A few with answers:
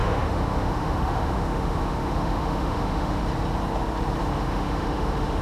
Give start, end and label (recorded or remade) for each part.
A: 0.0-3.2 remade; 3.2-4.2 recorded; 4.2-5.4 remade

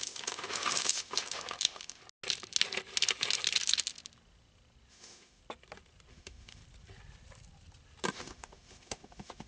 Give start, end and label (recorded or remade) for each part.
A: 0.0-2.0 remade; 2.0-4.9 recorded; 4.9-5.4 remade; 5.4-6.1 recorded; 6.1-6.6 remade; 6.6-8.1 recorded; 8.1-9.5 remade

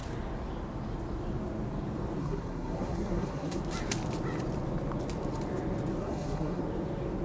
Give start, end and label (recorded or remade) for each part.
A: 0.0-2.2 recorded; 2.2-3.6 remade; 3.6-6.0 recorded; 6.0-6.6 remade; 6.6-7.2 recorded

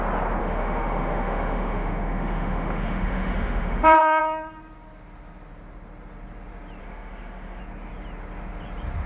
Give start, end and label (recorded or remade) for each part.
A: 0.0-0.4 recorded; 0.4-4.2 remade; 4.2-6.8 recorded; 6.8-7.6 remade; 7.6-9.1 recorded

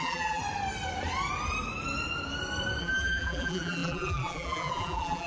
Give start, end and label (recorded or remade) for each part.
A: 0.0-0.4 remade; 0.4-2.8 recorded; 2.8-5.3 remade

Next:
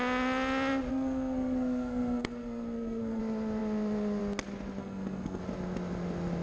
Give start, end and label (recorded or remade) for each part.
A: 0.0-0.9 recorded; 0.9-3.2 remade; 3.2-4.8 recorded; 4.8-5.4 remade; 5.4-6.4 recorded